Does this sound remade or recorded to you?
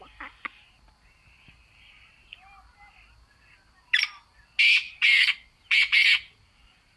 recorded